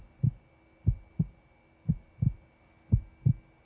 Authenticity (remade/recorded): recorded